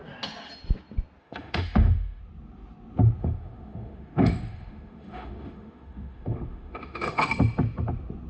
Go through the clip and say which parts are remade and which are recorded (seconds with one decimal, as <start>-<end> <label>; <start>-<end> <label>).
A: 0.0-1.2 recorded; 1.2-2.2 remade; 2.2-3.2 recorded; 3.2-7.3 remade; 7.3-8.3 recorded